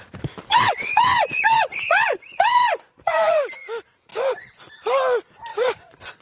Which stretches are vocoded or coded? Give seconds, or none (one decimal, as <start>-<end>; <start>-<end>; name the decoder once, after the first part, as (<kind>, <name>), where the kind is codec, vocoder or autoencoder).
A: 0.5-3.4 (vocoder, Vocos); 4.1-4.7; 5.5-6.2

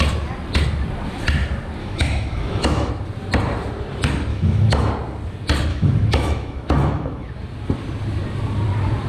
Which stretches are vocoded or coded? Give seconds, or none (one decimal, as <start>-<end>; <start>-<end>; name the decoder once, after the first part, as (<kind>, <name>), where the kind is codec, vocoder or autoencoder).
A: 1.8-2.9 (autoencoder, DAC-VAE); 4.3-4.9; 5.7-7.3

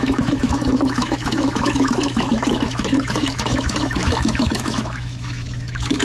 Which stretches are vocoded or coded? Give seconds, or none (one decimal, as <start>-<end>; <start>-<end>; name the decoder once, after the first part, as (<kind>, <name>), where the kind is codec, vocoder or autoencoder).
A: 0.0-6.0 (autoencoder, DAC-VAE)

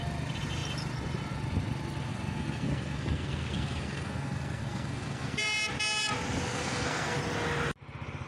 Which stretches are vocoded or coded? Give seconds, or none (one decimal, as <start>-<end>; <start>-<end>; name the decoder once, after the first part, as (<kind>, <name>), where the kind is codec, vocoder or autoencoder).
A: 2.1-5.4 (codec, SNAC); 6.5-7.2

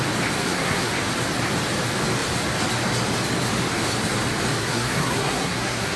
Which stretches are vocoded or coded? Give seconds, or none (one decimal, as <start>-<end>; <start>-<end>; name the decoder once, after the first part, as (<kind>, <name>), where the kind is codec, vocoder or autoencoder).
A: 0.4-0.9 (codec, SNAC); 4.6-6.0

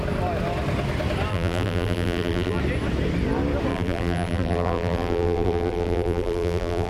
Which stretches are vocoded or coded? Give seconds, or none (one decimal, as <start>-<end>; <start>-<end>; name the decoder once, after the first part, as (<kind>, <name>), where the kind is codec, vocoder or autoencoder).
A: 1.3-2.6 (vocoder, BigVGAN v2); 3.7-6.9